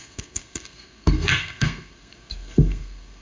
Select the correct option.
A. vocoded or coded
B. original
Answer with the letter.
A